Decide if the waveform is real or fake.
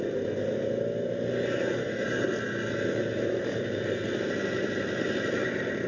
real